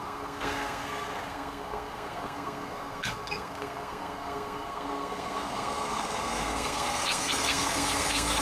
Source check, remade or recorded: remade